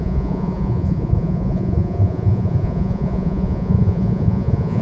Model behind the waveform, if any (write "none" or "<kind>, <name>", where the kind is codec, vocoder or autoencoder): vocoder, Vocos